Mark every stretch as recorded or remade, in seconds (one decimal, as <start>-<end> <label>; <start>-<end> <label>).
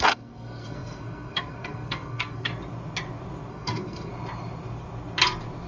0.0-2.5 remade; 2.5-3.5 recorded; 3.5-4.1 remade; 4.1-5.7 recorded